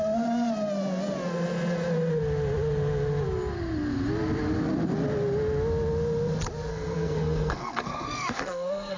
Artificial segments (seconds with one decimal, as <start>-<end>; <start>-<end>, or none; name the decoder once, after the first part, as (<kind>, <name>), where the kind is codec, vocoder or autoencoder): 6.7-9.0 (codec, SNAC)